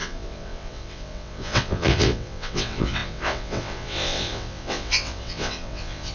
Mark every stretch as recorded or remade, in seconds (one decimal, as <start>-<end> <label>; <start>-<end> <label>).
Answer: 0.0-6.1 remade